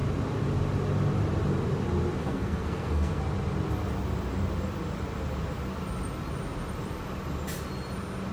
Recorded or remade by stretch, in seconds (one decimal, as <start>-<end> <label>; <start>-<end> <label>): 0.0-2.2 recorded; 2.2-3.2 remade; 3.2-8.3 recorded